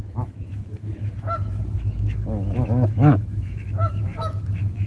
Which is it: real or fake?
fake